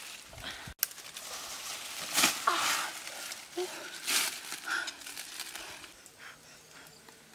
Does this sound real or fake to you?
real